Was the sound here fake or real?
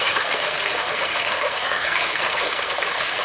fake